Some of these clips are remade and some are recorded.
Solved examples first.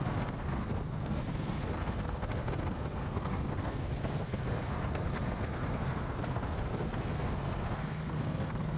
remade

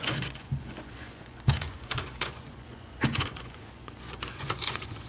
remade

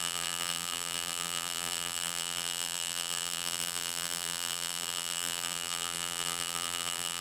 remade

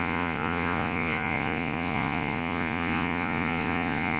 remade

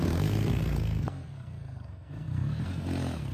remade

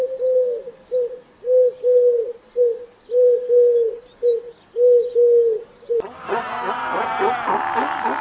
recorded